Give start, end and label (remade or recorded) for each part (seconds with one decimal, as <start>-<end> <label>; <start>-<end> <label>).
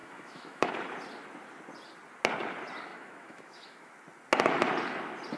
0.0-0.7 remade; 0.7-2.9 recorded; 2.9-3.9 remade; 3.9-5.4 recorded